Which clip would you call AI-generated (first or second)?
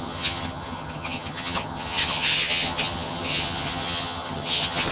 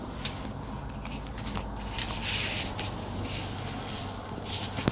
first